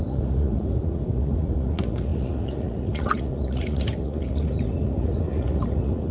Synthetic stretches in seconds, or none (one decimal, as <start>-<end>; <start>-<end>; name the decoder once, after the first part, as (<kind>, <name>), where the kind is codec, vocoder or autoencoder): 0.0-6.1 (vocoder, Vocos)